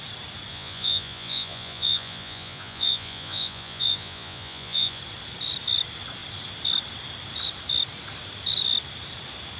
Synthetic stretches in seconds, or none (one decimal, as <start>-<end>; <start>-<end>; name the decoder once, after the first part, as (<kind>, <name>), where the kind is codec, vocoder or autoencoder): 0.5-5.0 (vocoder, Vocos)